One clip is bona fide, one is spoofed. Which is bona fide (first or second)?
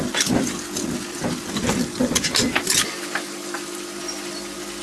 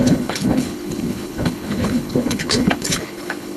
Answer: first